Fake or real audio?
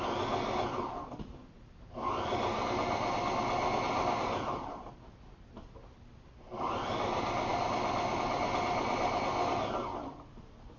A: real